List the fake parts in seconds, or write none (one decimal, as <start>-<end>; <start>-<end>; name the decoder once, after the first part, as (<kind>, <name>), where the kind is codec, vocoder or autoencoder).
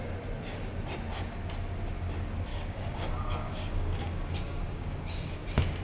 2.5-5.2 (codec, DAC)